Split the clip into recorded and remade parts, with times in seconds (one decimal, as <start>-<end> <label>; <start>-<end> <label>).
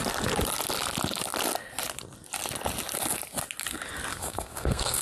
0.0-4.1 recorded; 4.1-5.0 remade